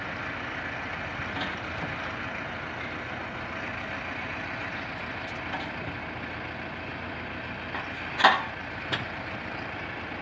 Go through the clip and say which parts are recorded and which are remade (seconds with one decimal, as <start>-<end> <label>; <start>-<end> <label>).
0.0-3.2 remade; 3.2-6.3 recorded; 6.3-10.2 remade